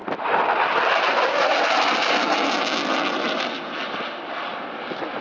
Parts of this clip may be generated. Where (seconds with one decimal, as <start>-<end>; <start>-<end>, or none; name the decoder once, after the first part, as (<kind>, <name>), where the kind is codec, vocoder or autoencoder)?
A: none